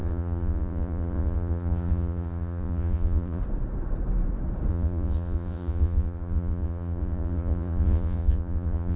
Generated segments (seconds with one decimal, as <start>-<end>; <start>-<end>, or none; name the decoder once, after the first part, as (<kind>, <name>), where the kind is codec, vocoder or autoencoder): 0.0-3.4 (vocoder, Vocos); 4.7-9.0